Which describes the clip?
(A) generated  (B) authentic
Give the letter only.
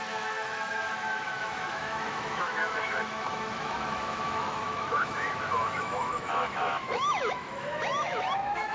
A